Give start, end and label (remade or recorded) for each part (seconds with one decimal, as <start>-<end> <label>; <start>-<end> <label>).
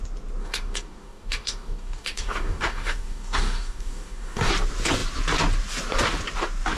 0.0-0.4 recorded; 0.4-4.5 remade; 4.5-6.8 recorded